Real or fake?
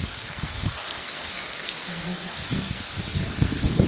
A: fake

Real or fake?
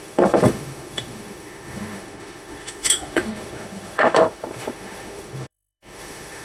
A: fake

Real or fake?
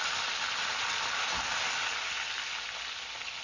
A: real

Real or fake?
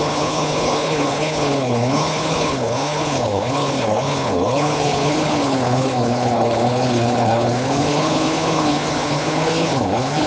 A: fake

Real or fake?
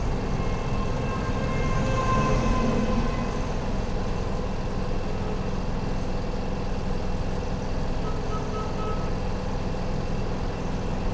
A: real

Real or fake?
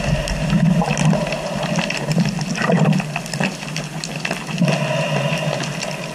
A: real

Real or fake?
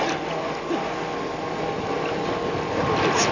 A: real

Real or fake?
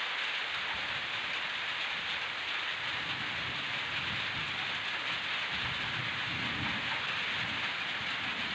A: real